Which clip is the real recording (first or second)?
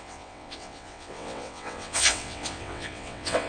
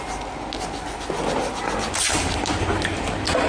second